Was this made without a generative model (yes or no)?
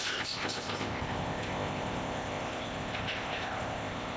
no